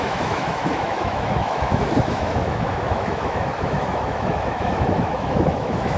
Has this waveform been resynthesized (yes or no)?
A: yes